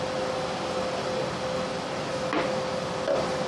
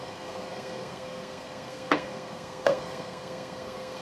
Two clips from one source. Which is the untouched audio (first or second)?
first